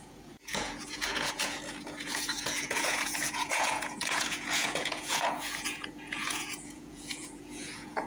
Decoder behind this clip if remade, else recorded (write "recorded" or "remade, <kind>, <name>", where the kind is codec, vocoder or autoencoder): remade, vocoder, Vocos